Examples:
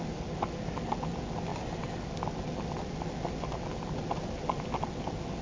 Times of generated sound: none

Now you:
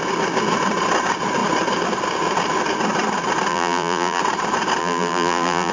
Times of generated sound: 3.5-4.2; 4.8-5.7

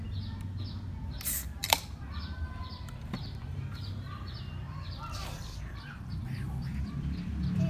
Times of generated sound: 1.6-6.2

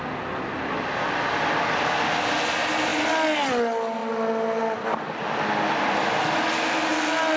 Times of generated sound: none

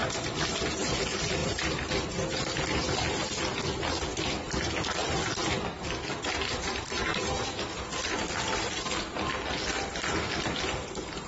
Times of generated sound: none

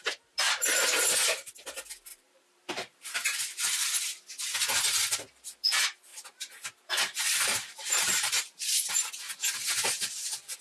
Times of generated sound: 2.1-3.8; 6.1-8.9